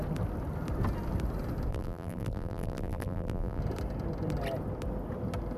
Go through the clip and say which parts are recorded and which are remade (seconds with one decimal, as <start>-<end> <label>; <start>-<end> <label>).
0.0-1.7 recorded; 1.7-3.6 remade; 3.6-5.6 recorded